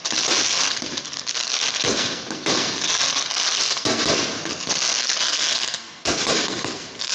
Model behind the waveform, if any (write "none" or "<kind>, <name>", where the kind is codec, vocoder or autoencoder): codec, SNAC